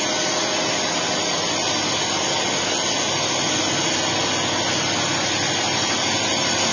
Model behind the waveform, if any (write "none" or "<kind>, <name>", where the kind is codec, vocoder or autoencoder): none